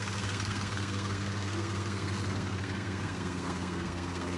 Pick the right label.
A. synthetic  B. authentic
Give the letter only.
A